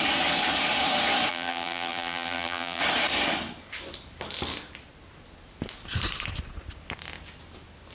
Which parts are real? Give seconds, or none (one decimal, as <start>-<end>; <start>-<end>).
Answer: 0.0-1.3; 2.8-7.9